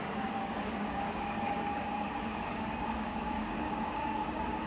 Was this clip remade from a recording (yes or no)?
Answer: yes